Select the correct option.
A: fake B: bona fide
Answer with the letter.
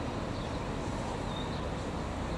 B